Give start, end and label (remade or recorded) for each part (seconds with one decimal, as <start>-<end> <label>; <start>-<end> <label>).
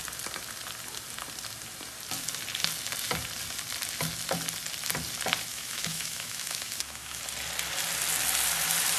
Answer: 0.0-5.5 recorded; 5.5-7.2 remade; 7.2-9.0 recorded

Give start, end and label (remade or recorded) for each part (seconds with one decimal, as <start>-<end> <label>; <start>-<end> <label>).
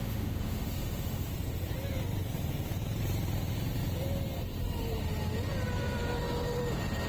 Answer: 0.0-1.3 remade; 1.3-7.1 recorded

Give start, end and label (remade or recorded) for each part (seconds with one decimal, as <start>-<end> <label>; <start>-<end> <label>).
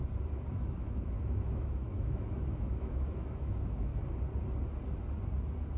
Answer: 0.0-0.5 recorded; 0.5-3.9 remade; 3.9-5.8 recorded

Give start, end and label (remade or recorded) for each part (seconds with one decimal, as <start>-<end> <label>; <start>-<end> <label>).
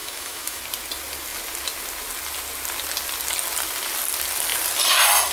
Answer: 0.0-0.6 remade; 0.6-5.3 recorded